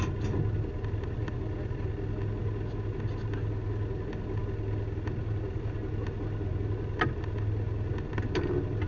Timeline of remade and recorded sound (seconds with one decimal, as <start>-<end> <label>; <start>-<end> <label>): 0.0-8.9 recorded